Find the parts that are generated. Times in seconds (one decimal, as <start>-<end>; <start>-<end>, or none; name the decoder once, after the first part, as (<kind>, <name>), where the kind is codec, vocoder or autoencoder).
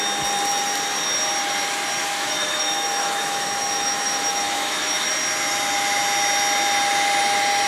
2.0-5.1 (autoencoder, DAC-VAE)